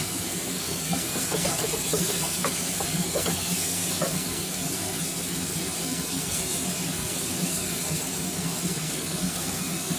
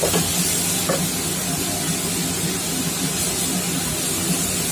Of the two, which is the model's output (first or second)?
first